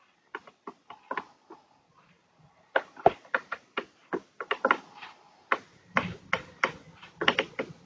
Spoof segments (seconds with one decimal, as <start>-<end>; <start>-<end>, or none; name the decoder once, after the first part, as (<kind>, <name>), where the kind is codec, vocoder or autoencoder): 2.2-3.6 (vocoder, BigVGAN v2); 4.0-4.8; 5.7-6.2